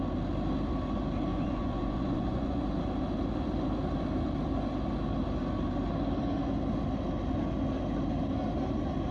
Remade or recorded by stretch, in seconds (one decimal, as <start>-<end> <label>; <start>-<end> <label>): 0.0-1.3 recorded; 1.3-2.6 remade; 2.6-9.1 recorded